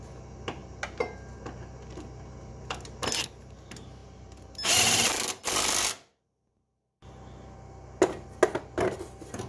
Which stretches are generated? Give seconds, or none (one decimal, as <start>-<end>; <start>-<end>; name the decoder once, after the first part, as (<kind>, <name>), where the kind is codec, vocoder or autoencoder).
none